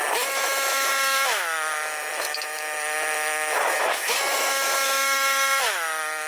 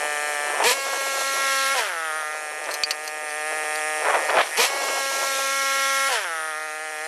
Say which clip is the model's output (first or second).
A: first